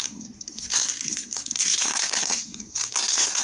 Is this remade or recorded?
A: remade